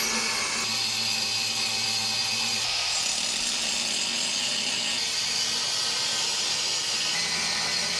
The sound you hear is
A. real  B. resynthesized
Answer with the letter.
A